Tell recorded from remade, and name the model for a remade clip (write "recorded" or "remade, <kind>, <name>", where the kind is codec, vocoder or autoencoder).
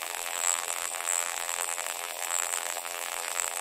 remade, vocoder, BigVGAN v2